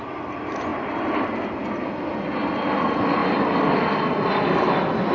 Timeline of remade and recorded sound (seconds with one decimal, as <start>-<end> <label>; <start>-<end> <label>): 0.0-5.1 recorded